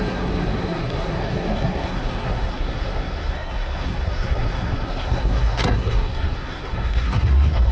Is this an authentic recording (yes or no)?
no